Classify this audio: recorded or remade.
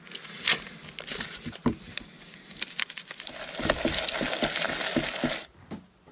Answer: recorded